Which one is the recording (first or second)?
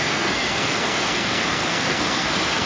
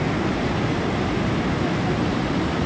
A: second